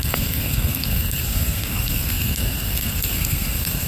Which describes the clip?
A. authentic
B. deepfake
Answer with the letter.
B